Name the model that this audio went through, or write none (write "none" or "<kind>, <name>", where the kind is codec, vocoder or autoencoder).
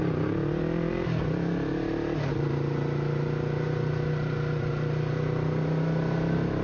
none